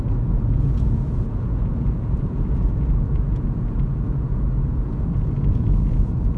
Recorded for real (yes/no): no